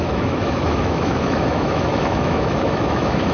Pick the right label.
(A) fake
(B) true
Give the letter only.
A